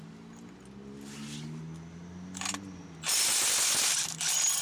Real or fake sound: real